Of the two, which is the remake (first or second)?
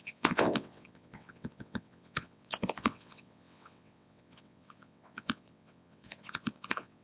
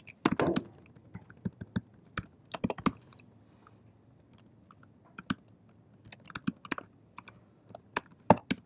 first